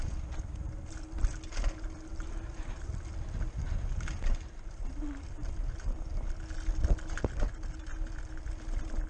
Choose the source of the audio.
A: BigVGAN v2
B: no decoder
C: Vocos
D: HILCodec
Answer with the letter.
B